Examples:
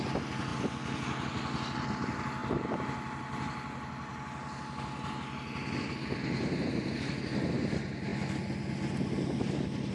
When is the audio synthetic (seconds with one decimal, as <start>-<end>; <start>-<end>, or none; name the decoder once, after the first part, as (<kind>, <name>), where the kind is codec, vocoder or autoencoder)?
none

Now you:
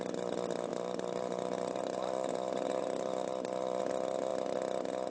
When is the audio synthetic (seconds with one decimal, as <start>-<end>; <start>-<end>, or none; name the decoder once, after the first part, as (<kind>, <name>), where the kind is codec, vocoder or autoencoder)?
0.7-3.8 (vocoder, BigVGAN v2)

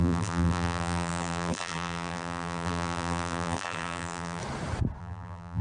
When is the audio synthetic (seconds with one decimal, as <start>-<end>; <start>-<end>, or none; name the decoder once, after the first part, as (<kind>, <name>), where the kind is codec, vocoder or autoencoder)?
0.0-4.4 (vocoder, BigVGAN v2); 5.0-5.6